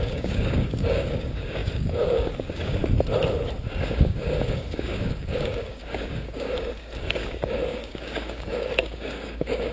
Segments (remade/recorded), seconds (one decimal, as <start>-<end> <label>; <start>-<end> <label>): 0.0-2.8 remade; 2.8-3.7 recorded; 3.7-9.7 remade